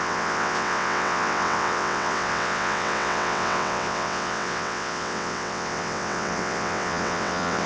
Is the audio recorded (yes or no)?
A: no